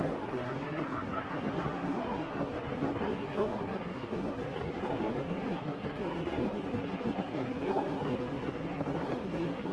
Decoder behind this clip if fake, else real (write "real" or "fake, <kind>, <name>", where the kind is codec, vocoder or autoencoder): fake, codec, SNAC